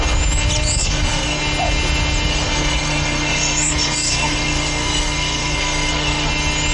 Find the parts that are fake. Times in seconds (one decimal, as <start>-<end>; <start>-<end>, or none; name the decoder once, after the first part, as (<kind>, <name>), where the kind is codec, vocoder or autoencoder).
0.8-1.4 (codec, SNAC); 2.3-6.3